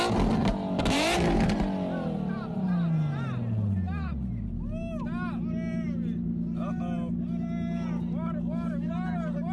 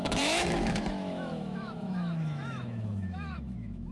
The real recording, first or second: first